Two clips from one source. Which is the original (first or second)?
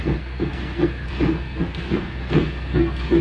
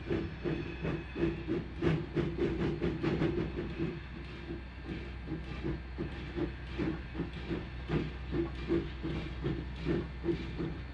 second